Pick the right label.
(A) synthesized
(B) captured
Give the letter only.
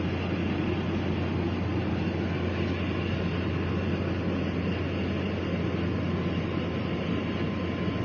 B